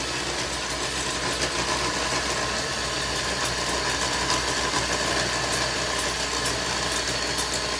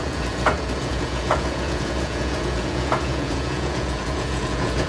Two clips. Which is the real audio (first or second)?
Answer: first